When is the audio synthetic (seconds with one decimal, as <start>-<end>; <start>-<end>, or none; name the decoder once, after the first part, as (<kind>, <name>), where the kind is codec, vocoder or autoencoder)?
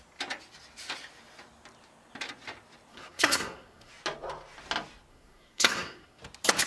2.9-3.9 (codec, SNAC); 5.1-6.2